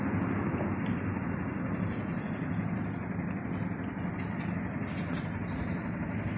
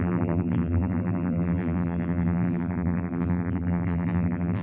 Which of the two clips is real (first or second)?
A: first